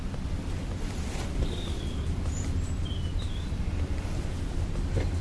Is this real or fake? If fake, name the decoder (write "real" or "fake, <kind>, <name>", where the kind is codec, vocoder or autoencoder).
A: real